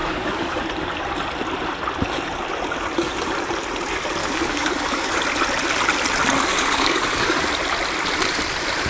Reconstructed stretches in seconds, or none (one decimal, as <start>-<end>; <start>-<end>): 0.0-0.6; 4.2-5.2; 6.5-7.5